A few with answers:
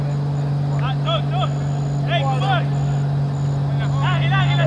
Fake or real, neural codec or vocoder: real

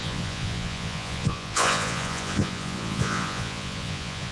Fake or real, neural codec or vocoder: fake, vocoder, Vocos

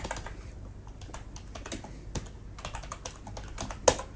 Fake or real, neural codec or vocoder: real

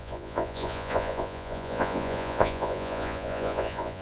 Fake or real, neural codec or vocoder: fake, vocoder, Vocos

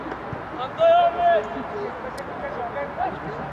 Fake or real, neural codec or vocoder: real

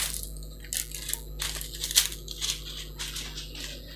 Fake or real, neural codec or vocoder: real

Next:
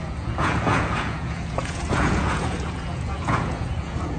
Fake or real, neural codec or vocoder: fake, vocoder, Vocos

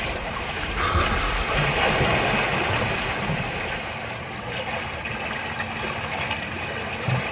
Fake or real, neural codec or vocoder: real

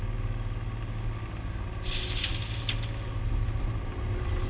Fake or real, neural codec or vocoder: real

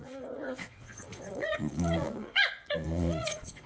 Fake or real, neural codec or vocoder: fake, vocoder, Vocos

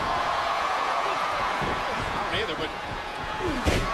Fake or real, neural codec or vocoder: fake, vocoder, Vocos